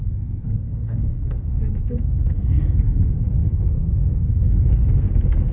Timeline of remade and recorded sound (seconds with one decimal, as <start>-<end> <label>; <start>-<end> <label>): 0.0-5.5 remade